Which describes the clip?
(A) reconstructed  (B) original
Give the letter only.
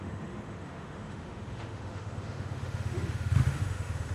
A